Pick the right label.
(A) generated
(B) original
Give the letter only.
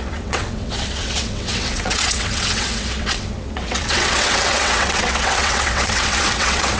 A